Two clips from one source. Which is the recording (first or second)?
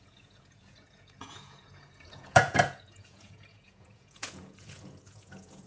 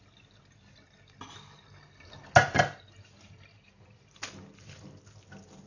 second